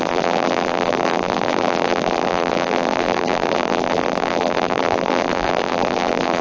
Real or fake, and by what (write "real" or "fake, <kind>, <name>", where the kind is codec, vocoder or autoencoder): fake, vocoder, BigVGAN v2